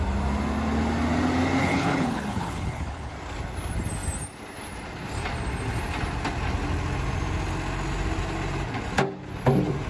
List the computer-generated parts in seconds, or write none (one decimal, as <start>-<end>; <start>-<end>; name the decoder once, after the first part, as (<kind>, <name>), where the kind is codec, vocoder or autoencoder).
1.6-3.1 (codec, HILCodec)